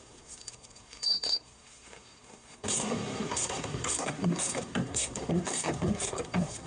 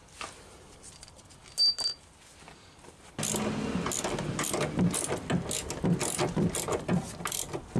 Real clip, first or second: second